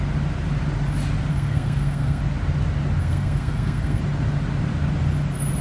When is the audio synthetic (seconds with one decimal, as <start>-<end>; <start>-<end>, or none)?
1.3-2.2; 3.0-4.0